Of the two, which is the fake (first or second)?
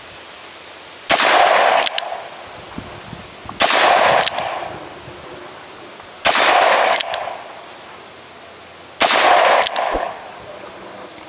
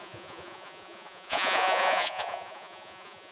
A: second